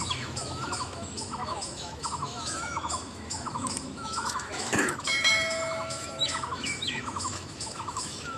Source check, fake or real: fake